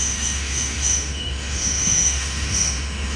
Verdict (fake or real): fake